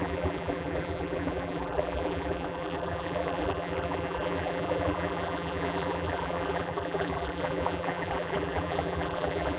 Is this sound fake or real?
fake